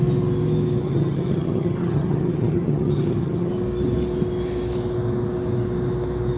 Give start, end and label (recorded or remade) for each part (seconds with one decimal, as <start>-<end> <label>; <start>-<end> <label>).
0.0-0.8 recorded; 0.8-3.5 remade; 3.5-6.4 recorded